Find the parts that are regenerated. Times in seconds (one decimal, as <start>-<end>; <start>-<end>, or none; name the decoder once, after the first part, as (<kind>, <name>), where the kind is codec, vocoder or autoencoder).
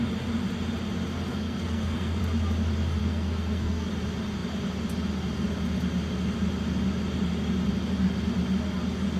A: 1.3-2.2 (codec, SNAC); 3.0-3.9